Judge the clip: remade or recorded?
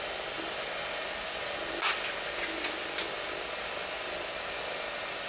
recorded